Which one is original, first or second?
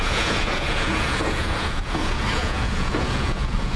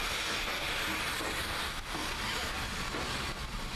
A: second